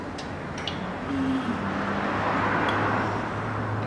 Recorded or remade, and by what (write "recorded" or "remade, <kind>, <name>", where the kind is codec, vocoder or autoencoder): recorded